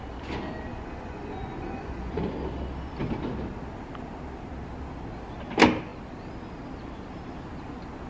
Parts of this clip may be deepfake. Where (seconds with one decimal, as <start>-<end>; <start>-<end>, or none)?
0.7-2.2